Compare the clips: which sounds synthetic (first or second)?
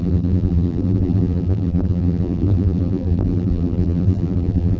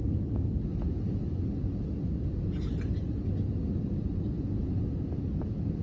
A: first